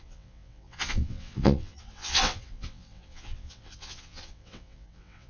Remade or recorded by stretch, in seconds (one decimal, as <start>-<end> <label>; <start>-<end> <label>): 0.0-5.3 remade